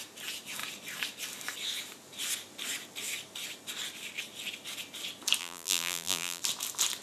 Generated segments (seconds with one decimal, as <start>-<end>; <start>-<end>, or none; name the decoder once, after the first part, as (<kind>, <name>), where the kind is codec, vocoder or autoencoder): 5.4-6.4 (vocoder, BigVGAN v2)